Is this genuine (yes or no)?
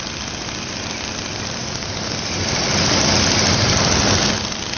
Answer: yes